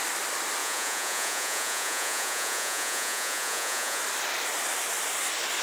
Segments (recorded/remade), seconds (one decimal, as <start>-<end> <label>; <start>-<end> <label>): 0.0-0.6 recorded; 0.6-4.0 remade; 4.0-5.6 recorded